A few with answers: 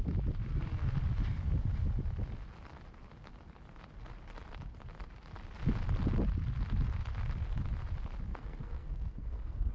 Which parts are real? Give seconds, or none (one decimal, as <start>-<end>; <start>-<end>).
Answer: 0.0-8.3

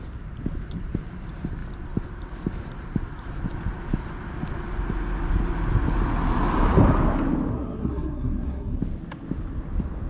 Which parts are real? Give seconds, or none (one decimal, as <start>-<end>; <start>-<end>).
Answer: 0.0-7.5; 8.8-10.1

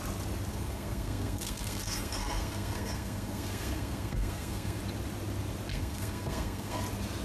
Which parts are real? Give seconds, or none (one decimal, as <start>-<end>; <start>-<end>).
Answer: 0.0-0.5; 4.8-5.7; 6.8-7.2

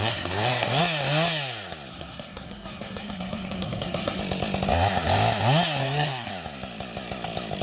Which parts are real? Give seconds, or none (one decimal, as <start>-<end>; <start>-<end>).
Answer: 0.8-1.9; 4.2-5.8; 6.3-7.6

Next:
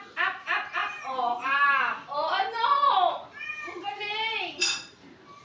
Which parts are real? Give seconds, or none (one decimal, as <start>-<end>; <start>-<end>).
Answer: 0.0-5.4

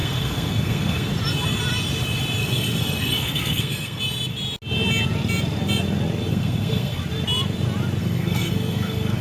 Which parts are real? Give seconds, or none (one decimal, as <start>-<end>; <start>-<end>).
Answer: 1.1-2.4; 4.0-6.3; 7.0-8.0

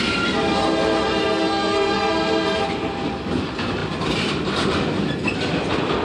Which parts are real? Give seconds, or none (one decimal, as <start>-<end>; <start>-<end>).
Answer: 0.0-1.2; 2.1-6.0